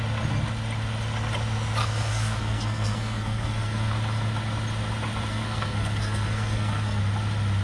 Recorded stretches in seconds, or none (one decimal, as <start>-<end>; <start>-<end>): 0.0-1.8; 3.9-5.3; 7.0-7.6